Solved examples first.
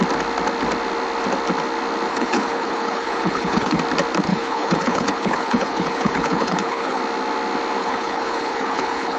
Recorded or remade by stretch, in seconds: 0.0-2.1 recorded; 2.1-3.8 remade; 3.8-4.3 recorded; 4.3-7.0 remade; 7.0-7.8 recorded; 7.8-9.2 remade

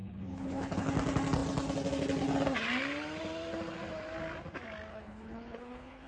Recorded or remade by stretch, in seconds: 0.0-0.9 remade; 0.9-4.9 recorded; 4.9-6.1 remade

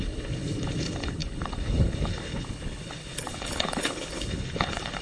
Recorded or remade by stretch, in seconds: 0.0-5.0 remade

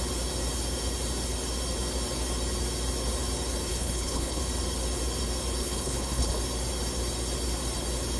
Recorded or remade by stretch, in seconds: 0.0-3.7 recorded; 3.7-4.4 remade; 4.4-5.6 recorded; 5.6-6.4 remade; 6.4-8.2 recorded

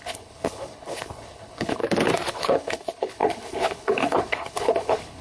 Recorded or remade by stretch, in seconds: 0.0-1.8 remade; 1.8-2.3 recorded; 2.3-5.2 remade

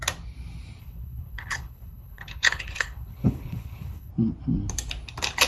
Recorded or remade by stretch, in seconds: 0.0-0.8 recorded; 0.8-4.1 remade; 4.1-5.5 recorded